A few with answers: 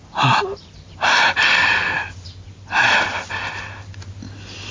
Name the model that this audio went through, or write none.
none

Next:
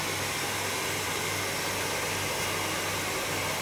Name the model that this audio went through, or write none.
none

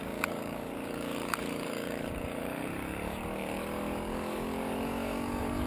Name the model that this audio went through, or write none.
codec, DAC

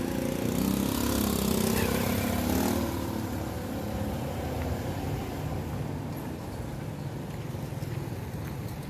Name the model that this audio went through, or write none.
none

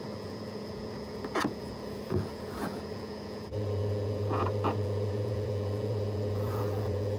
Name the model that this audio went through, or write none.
vocoder, Vocos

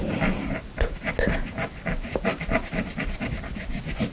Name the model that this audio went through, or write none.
none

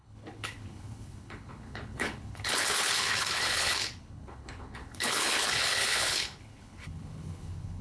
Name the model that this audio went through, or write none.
codec, HILCodec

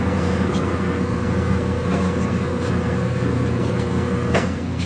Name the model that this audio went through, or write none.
codec, SNAC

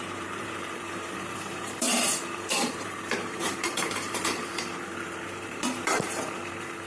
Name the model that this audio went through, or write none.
vocoder, BigVGAN v2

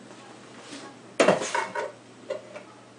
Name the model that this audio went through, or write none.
none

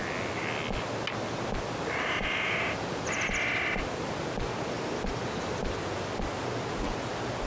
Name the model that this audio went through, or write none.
none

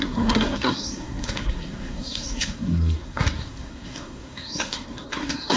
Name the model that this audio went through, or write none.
codec, SNAC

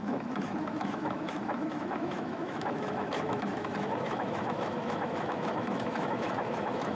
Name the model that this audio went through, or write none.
autoencoder, DAC-VAE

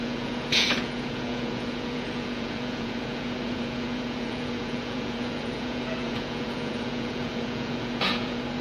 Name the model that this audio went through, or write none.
vocoder, Vocos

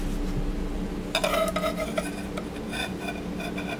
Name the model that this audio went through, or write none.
none